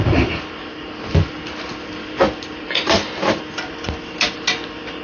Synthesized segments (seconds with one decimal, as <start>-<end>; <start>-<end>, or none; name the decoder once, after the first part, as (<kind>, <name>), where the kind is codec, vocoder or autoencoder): none